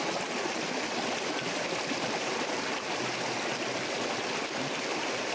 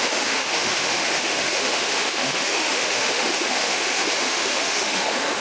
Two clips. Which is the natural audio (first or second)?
first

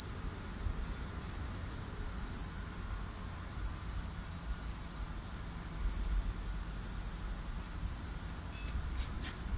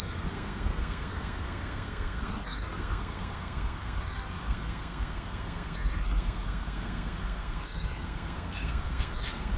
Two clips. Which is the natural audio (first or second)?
first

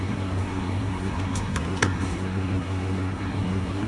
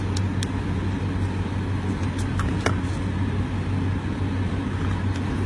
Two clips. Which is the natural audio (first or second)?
second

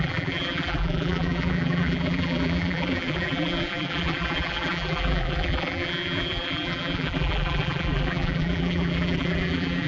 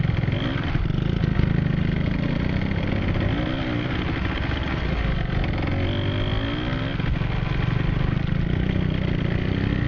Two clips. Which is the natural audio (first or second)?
second